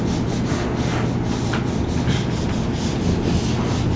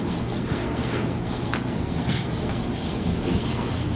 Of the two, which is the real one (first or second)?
first